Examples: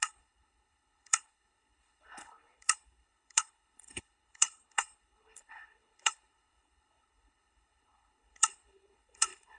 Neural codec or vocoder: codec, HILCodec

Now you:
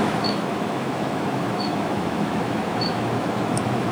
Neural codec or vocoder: autoencoder, DAC-VAE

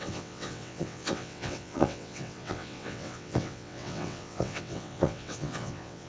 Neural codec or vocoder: vocoder, WaveNeXt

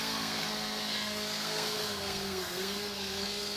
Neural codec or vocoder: codec, SNAC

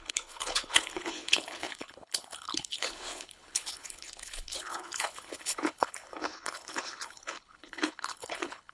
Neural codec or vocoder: codec, HILCodec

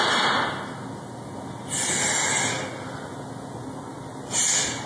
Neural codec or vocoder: none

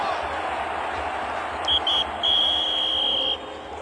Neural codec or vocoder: none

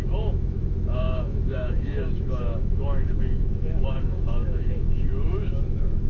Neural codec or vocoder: autoencoder, DAC-VAE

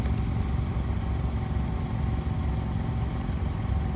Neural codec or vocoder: none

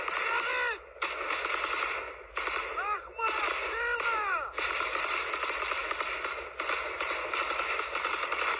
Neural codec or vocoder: none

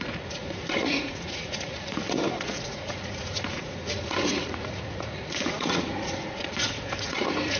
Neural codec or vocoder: vocoder, Vocos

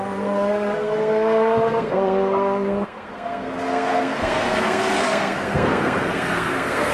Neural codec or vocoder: codec, SNAC